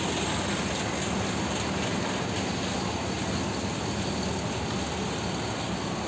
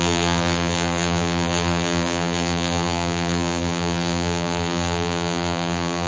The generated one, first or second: second